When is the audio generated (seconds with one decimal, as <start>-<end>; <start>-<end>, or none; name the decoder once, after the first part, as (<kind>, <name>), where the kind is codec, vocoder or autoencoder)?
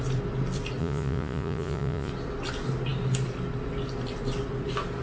0.8-2.1 (vocoder, Vocos)